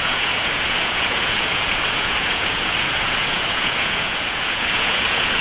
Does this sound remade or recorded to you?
remade